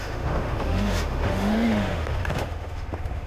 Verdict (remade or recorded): remade